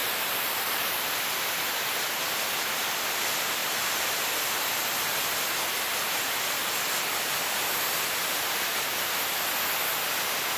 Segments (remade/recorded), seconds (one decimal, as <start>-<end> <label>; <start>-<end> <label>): 0.0-1.0 remade; 1.0-3.6 recorded; 3.6-4.7 remade; 4.7-10.6 recorded